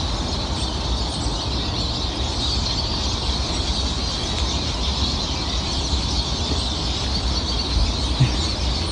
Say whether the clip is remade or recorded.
recorded